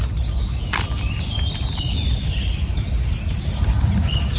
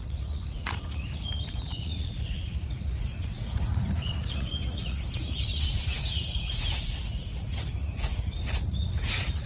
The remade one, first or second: second